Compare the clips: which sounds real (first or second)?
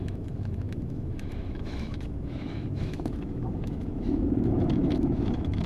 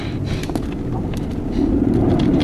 second